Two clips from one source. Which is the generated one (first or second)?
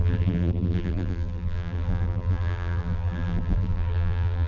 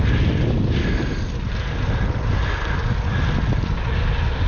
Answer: first